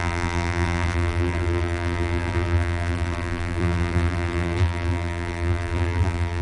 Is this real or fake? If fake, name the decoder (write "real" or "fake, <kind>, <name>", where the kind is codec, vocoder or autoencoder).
fake, vocoder, BigVGAN v2